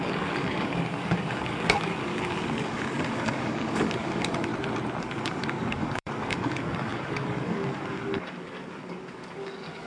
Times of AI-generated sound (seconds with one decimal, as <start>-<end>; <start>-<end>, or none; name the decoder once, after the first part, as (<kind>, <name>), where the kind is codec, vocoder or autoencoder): 0.0-4.5 (codec, DAC); 5.0-9.9